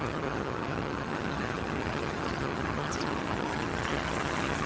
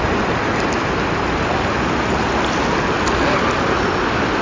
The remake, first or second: first